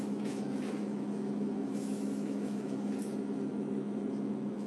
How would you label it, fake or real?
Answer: fake